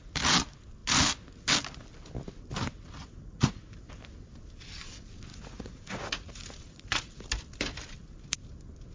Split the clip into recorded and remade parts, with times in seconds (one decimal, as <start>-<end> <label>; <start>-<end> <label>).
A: 0.0-3.0 recorded; 3.0-3.9 remade; 3.9-5.3 recorded; 5.3-7.0 remade; 7.0-8.9 recorded